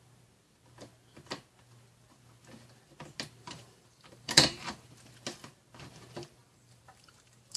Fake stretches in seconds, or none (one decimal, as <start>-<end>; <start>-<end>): 3.4-4.9; 6.4-7.6